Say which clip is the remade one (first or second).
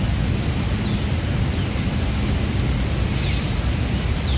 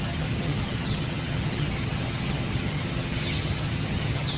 second